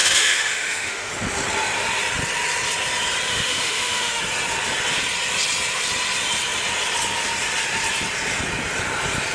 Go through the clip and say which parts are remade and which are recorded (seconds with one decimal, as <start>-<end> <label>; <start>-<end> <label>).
0.0-1.1 remade; 1.1-3.3 recorded; 3.3-4.2 remade; 4.2-9.3 recorded

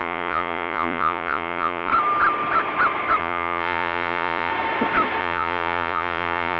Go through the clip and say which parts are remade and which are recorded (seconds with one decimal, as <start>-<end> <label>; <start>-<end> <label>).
0.0-1.9 remade; 1.9-3.2 recorded; 3.2-4.5 remade; 4.5-5.2 recorded; 5.2-6.6 remade

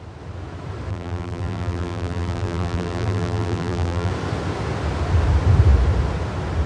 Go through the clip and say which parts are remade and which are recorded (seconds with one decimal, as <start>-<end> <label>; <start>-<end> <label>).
0.0-0.9 recorded; 0.9-4.1 remade; 4.1-6.7 recorded

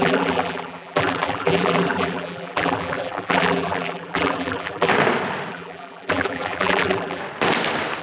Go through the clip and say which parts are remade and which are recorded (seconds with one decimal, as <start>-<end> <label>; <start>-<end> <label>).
0.0-4.9 remade; 4.9-5.5 recorded; 5.5-7.2 remade; 7.2-8.0 recorded

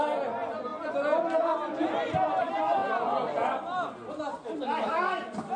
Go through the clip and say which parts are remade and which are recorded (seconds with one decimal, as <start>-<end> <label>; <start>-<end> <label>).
0.0-5.6 recorded